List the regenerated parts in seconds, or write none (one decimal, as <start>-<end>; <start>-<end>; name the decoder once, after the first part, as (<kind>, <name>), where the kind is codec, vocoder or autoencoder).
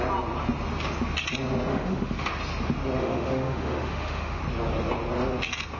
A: 1.7-2.3 (autoencoder, DAC-VAE); 3.0-4.4